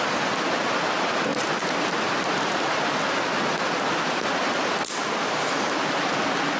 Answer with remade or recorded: recorded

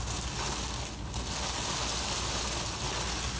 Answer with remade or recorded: recorded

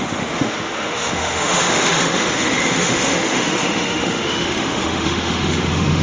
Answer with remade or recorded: remade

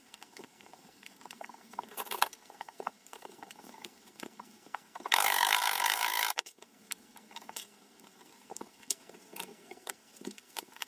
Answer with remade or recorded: remade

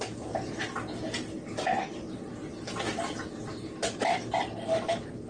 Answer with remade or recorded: recorded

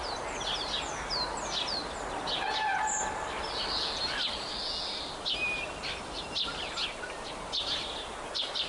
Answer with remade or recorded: recorded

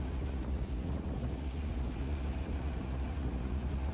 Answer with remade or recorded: remade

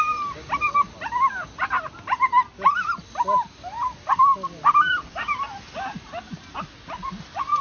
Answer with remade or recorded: remade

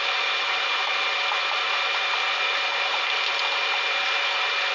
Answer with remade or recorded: remade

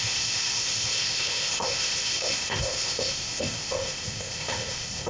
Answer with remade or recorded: remade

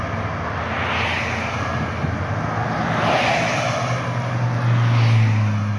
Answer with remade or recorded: recorded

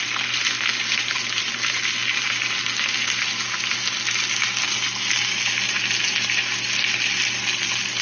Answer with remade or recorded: recorded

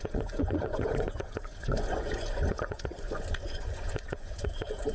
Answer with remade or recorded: remade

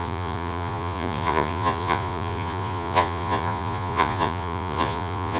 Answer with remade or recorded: remade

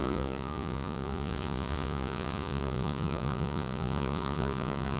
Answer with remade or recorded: remade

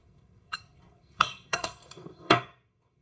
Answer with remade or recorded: remade